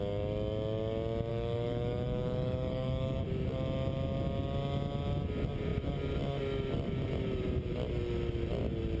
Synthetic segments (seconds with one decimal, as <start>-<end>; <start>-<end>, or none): 1.3-3.2